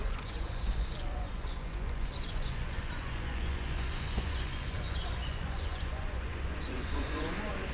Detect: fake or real fake